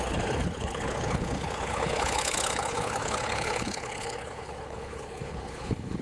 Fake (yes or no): yes